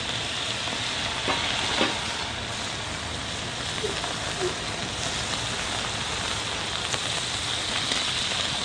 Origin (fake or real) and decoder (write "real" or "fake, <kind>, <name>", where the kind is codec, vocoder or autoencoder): real